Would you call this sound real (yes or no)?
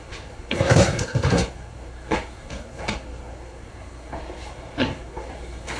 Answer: no